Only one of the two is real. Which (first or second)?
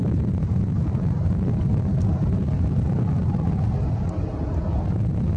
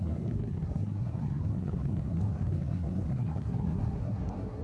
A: first